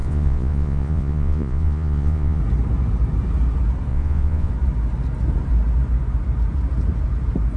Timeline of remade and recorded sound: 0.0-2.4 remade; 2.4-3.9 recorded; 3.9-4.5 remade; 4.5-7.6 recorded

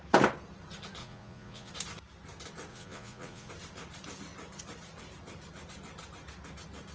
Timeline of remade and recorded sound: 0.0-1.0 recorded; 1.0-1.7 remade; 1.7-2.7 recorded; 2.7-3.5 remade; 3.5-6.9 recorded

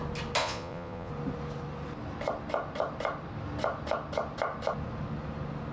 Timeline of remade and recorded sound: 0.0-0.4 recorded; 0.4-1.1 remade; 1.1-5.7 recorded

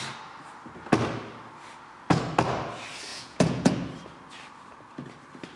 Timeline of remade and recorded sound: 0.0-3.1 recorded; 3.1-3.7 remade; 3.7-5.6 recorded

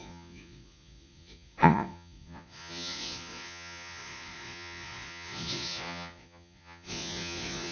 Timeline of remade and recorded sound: 0.0-7.7 remade

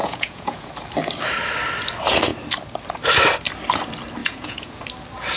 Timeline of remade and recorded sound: 0.0-0.7 remade; 0.7-4.2 recorded; 4.2-4.8 remade; 4.8-5.4 recorded

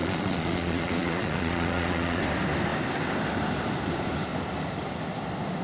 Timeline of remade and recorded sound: 0.0-2.2 remade; 2.2-5.6 recorded

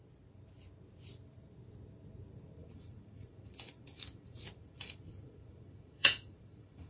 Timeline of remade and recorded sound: 0.0-2.6 recorded; 2.6-6.9 remade